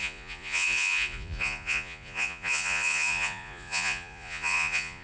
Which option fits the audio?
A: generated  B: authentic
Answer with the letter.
A